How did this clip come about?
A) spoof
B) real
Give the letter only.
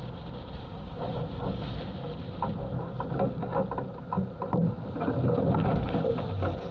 B